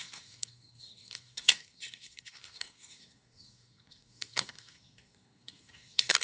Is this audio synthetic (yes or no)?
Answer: yes